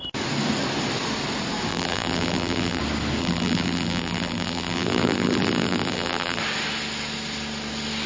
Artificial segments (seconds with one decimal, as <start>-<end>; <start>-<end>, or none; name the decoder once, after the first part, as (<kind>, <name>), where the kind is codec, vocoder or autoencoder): 1.7-2.8 (vocoder, BigVGAN v2); 3.2-6.4